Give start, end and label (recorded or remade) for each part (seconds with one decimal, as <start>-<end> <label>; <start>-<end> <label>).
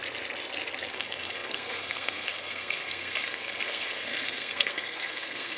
0.0-0.9 recorded; 0.9-5.6 remade